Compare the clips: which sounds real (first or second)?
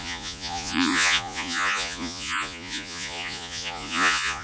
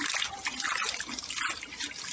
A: second